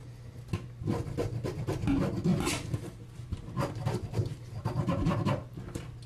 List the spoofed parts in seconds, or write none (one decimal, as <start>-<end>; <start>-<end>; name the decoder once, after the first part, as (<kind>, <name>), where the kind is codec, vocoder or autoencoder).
2.3-5.6 (vocoder, BigVGAN v2)